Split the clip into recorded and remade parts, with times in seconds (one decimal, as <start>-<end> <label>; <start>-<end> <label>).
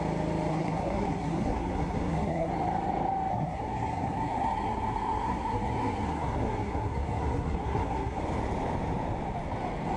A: 0.0-0.5 recorded; 0.5-2.5 remade; 2.5-3.3 recorded; 3.3-8.2 remade; 8.2-10.0 recorded